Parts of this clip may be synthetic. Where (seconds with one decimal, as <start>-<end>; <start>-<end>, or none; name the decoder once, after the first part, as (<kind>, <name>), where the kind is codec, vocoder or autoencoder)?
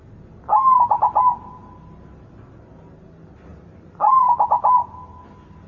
3.5-4.2 (vocoder, BigVGAN v2)